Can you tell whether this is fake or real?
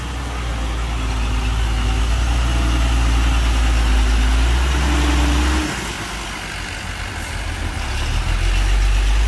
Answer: real